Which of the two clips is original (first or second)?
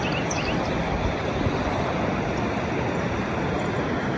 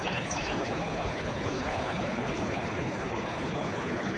first